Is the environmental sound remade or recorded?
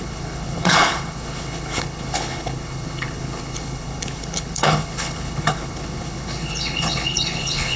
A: remade